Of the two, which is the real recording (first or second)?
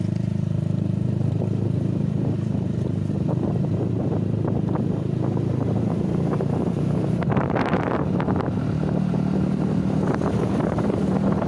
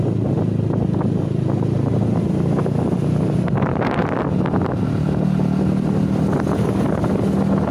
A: second